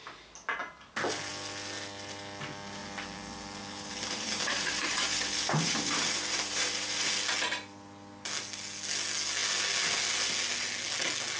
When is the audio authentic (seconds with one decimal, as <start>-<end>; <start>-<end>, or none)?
0.0-2.8; 7.1-11.4